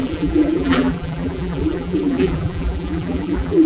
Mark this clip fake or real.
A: fake